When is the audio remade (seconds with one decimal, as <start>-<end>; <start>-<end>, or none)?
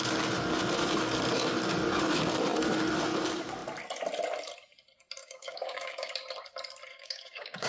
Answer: 5.2-6.1; 6.9-7.7